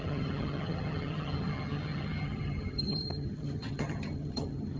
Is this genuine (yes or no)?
no